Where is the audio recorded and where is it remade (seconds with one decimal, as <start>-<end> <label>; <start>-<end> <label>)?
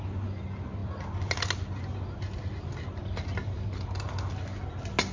0.0-5.1 recorded